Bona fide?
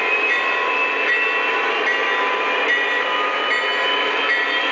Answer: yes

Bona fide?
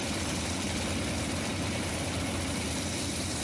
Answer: no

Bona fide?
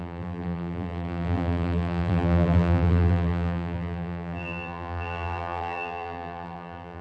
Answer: no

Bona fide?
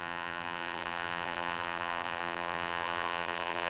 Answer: no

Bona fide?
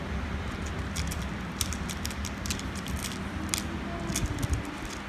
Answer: yes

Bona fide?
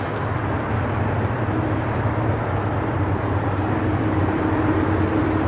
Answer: no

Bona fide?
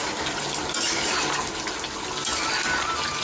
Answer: yes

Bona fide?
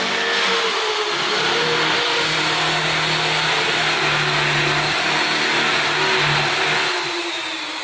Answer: yes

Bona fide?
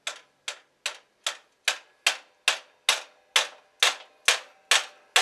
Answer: yes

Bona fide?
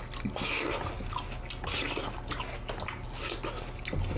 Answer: yes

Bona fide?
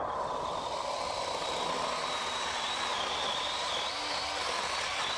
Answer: yes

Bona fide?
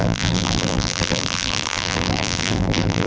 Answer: no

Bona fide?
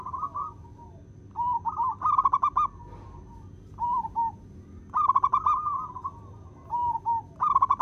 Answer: yes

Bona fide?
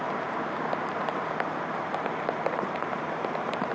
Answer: no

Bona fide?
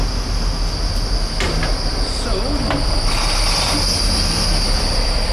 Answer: yes